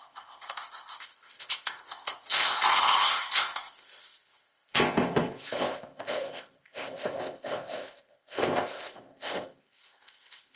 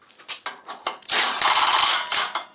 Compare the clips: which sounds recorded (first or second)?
second